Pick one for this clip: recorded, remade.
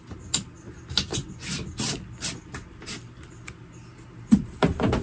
recorded